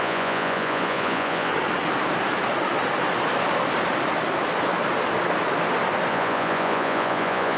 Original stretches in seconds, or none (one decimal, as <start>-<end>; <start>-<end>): 1.5-6.1